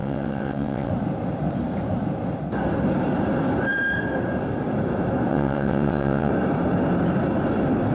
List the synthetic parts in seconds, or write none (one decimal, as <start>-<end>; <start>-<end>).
0.0-0.9; 5.3-6.3